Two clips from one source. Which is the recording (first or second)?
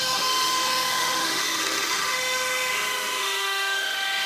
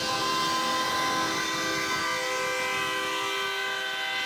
second